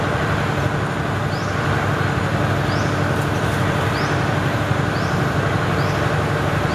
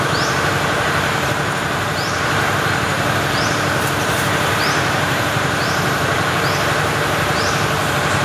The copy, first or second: second